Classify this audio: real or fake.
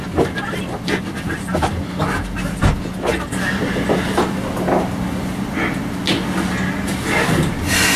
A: real